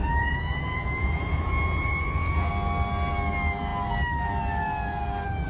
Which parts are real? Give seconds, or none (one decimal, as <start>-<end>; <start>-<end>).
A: 2.5-5.5